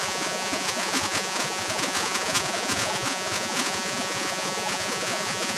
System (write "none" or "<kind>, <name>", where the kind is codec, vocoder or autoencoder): vocoder, Vocos